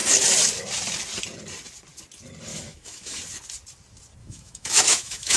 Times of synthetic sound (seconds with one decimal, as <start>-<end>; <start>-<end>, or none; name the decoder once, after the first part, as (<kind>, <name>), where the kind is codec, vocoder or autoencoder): 2.5-3.2 (autoencoder, DAC-VAE); 4.2-5.4